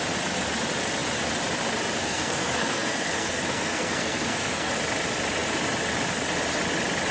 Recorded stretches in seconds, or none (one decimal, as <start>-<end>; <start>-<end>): 0.0-2.0; 4.7-7.1